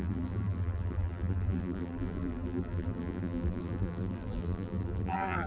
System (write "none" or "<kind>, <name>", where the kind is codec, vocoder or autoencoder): vocoder, BigVGAN v2